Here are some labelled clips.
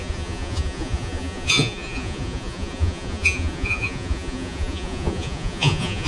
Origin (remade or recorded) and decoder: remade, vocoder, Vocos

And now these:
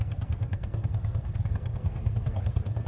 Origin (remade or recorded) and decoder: remade, codec, SNAC